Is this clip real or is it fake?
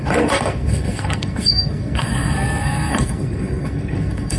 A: fake